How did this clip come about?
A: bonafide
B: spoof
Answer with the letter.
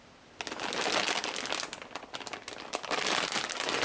A